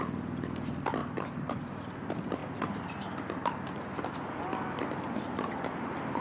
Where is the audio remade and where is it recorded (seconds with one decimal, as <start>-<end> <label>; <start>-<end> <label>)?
0.0-1.0 recorded; 1.0-1.7 remade; 1.7-6.2 recorded